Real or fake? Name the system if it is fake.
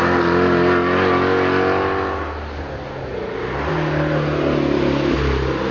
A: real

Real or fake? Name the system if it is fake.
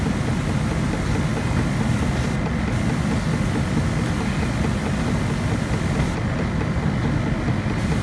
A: real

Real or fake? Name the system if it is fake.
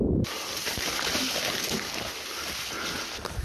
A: real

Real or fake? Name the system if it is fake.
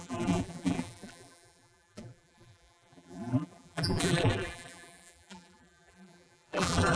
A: fake, vocoder, BigVGAN v2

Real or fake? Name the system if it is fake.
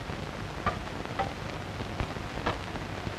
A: real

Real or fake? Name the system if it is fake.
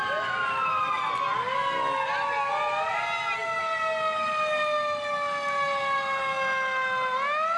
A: real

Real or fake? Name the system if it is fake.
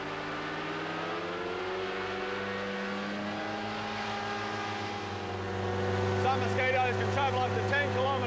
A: real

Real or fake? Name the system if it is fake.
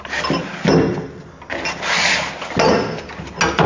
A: real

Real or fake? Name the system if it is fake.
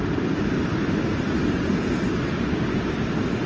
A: real